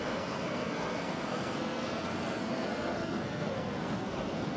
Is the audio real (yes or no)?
no